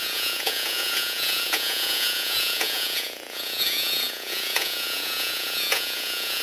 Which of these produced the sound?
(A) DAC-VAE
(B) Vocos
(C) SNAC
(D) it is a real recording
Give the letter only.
B